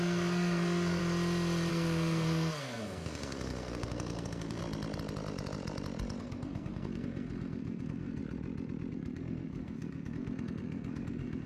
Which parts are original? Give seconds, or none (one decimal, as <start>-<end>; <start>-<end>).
1.0-1.7; 4.6-6.2; 8.2-8.9